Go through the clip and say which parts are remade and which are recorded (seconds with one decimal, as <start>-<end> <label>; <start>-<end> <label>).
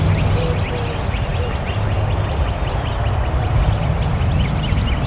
0.0-5.1 recorded